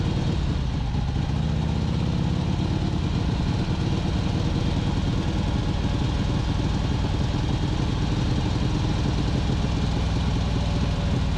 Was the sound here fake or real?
real